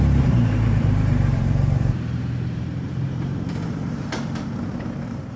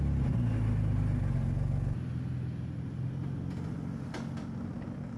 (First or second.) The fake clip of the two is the first